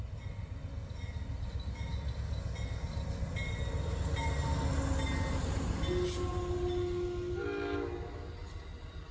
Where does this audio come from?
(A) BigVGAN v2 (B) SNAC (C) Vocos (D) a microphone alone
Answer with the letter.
D